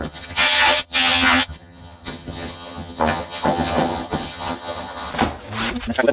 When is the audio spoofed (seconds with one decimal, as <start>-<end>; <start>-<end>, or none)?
0.0-5.1